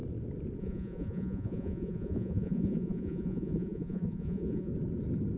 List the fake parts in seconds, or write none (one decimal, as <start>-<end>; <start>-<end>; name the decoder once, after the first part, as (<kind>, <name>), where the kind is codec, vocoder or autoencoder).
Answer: 0.6-4.7 (vocoder, Vocos)